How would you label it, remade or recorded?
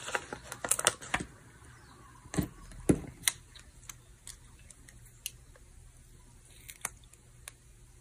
recorded